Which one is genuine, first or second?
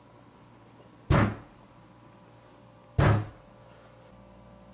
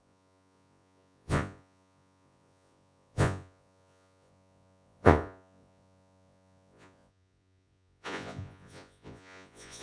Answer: first